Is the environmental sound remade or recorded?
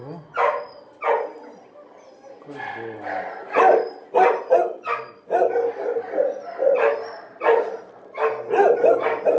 recorded